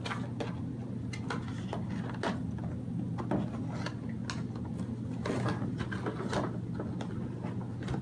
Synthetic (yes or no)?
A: no